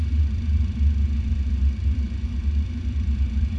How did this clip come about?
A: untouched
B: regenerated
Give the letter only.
B